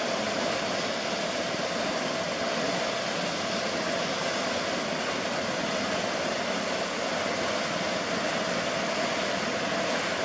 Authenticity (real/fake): real